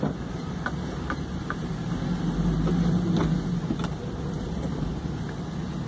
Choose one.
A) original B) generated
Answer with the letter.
A